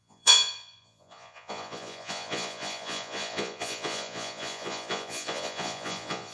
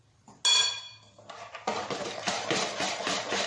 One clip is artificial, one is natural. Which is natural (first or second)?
second